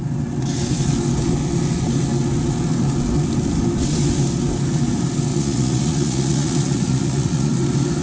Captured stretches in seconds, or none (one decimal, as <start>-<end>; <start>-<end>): 0.0-5.3; 7.5-8.0